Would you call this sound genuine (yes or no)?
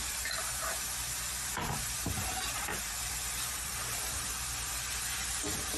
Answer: no